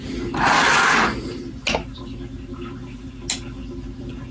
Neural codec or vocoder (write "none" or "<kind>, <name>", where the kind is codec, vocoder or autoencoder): none